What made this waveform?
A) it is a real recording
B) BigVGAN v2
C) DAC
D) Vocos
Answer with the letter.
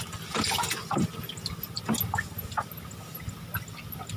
A